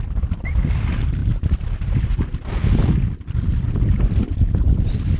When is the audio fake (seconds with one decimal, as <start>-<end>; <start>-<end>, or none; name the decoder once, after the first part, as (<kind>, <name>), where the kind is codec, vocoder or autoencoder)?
none